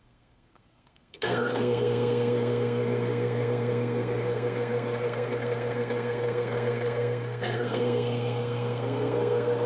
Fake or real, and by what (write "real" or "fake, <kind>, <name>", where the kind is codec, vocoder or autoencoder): fake, codec, SNAC